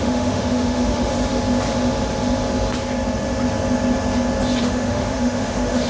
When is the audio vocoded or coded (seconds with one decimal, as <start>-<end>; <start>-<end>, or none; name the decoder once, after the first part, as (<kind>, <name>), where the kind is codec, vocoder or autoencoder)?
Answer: 0.0-1.1 (autoencoder, DAC-VAE); 4.6-5.9